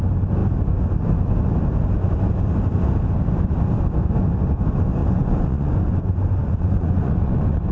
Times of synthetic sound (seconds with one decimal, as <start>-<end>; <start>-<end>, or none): 5.0-6.0; 6.4-7.7